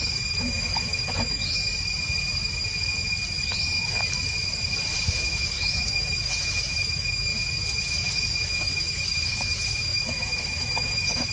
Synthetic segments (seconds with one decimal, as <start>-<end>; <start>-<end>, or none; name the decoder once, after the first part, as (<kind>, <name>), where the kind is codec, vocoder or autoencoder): 0.0-1.6 (autoencoder, DAC-VAE); 5.1-7.3; 8.5-11.3